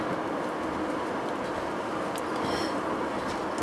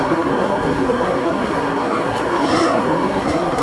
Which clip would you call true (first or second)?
first